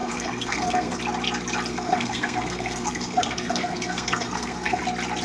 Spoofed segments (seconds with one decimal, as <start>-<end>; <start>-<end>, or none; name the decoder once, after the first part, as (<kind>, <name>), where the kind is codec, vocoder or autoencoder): 0.0-1.0 (codec, SNAC); 1.7-4.8